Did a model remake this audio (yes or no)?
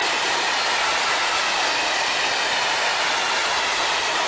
no